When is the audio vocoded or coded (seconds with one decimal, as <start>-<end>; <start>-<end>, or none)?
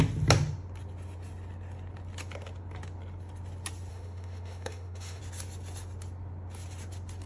3.9-5.2